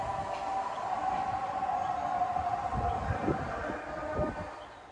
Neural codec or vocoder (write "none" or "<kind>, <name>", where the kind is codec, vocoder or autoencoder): none